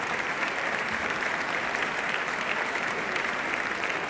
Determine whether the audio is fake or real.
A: fake